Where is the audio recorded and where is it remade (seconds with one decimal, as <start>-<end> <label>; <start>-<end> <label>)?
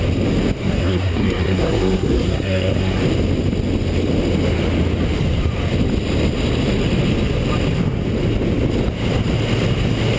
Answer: 0.0-0.6 recorded; 0.6-3.0 remade; 3.0-10.2 recorded